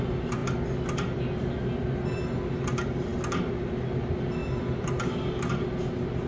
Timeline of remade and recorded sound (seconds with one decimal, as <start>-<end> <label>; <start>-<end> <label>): 0.0-6.3 recorded